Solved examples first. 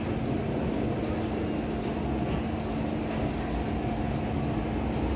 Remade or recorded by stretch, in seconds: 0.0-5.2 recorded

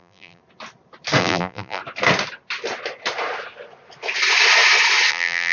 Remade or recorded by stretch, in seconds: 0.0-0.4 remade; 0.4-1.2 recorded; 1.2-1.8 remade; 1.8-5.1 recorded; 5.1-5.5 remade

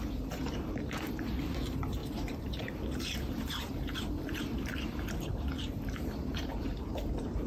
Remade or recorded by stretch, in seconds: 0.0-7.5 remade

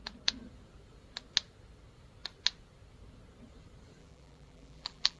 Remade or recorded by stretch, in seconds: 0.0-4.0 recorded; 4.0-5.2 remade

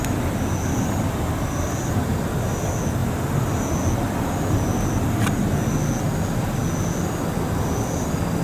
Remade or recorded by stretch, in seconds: 0.0-8.4 recorded

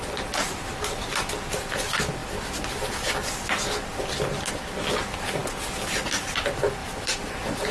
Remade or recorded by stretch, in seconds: 0.0-6.8 recorded; 6.8-7.3 remade; 7.3-7.7 recorded